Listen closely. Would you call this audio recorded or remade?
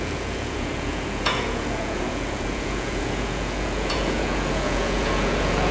remade